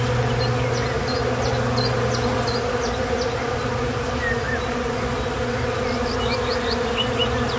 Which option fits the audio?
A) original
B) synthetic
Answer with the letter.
A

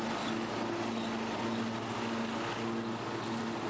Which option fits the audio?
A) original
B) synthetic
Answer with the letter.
A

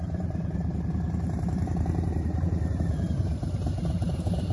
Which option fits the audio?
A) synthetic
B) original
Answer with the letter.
A